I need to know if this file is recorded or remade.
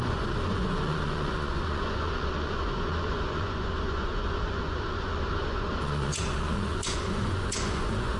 remade